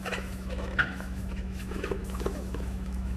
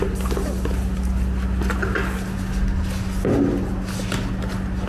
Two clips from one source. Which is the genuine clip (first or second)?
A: second